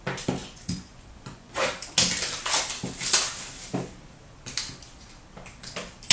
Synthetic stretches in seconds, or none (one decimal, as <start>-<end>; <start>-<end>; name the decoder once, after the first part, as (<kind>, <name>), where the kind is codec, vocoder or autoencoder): 0.4-1.5 (vocoder, Vocos)